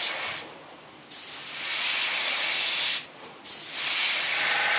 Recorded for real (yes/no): no